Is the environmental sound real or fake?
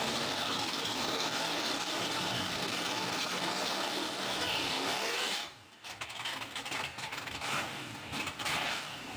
fake